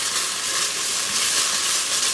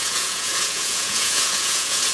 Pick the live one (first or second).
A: first